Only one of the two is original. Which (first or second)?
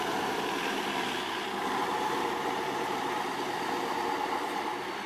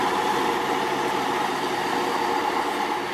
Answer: second